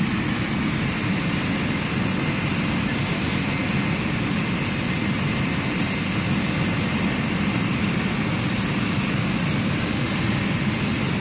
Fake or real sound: real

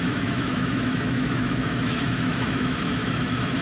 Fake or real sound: fake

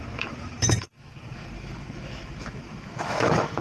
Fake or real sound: fake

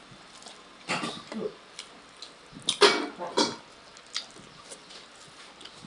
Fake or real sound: real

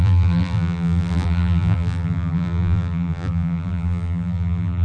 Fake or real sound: fake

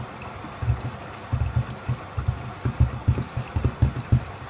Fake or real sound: real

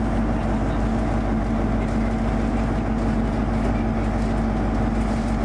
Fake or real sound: real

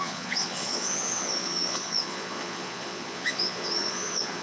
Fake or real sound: fake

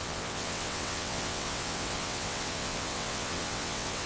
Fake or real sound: fake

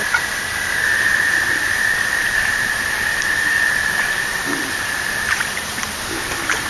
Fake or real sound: fake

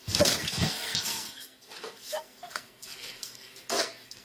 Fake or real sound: fake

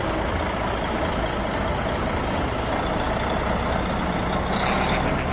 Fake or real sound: real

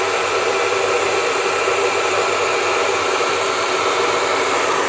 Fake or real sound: real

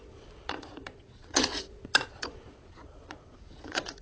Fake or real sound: fake